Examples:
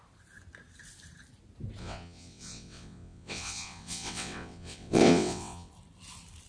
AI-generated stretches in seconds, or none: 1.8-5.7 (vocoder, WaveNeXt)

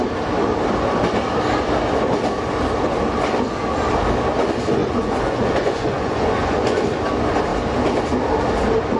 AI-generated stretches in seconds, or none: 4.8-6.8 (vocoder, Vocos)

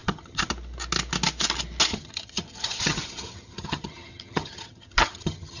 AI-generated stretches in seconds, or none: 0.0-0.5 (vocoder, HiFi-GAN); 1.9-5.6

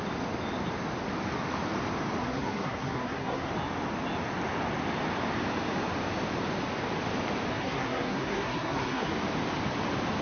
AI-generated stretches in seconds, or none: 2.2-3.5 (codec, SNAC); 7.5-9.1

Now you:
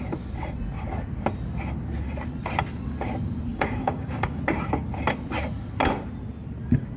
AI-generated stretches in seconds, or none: 3.5-4.4 (codec, DAC)

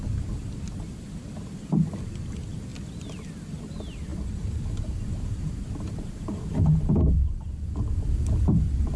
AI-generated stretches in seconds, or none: none